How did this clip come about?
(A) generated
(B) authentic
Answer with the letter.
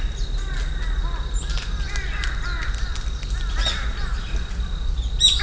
B